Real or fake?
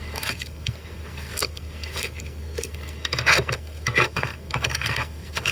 fake